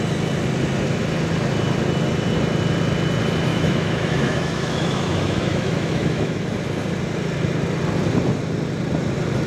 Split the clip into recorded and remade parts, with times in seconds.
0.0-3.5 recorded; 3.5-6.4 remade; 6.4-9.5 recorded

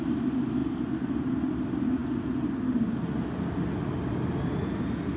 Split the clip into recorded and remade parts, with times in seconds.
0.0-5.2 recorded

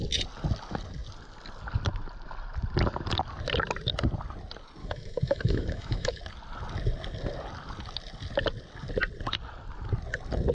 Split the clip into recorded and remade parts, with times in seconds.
0.0-4.8 recorded; 4.8-6.2 remade; 6.2-10.5 recorded

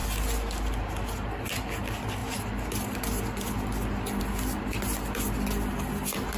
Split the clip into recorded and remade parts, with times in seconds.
0.0-6.4 recorded

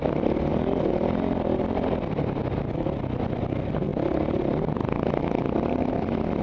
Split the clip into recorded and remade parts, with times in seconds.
0.0-6.4 recorded

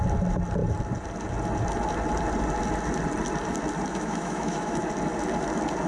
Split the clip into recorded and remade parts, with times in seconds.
0.0-3.9 recorded; 3.9-4.8 remade; 4.8-5.9 recorded

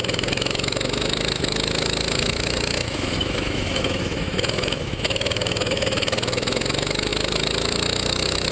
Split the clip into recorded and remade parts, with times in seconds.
0.0-8.5 remade

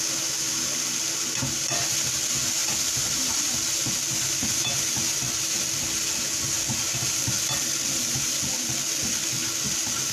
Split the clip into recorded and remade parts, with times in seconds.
0.0-10.1 recorded